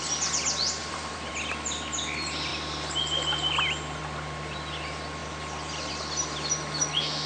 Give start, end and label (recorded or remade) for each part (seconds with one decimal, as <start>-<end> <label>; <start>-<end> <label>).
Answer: 0.0-0.8 recorded; 0.8-1.3 remade; 1.3-7.3 recorded